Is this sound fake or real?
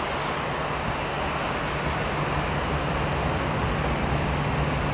real